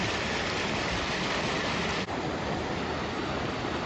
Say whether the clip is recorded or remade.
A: recorded